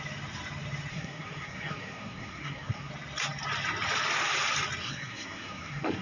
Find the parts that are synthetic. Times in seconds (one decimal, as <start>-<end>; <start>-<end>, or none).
0.9-2.9; 4.8-6.0